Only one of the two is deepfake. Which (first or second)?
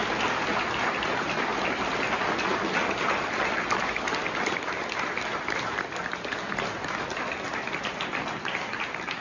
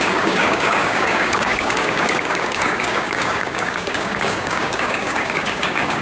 second